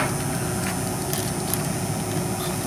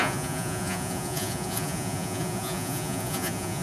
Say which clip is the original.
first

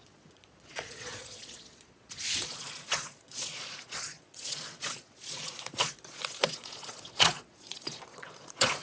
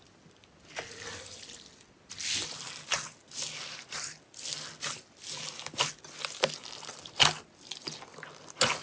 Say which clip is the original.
second